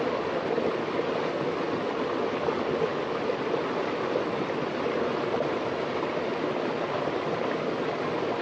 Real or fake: real